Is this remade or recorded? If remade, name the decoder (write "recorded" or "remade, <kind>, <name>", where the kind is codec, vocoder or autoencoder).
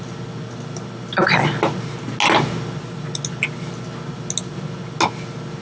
recorded